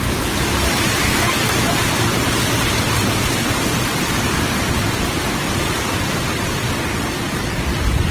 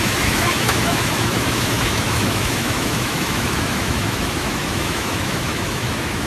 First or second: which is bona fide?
first